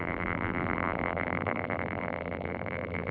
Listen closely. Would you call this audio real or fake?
fake